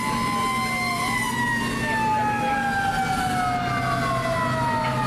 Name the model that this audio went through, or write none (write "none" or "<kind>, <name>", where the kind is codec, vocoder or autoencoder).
none